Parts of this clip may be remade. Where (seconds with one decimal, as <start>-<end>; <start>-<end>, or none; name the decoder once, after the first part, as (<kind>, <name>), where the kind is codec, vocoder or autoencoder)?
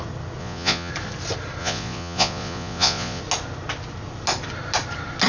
0.4-0.9 (vocoder, Vocos); 1.6-3.2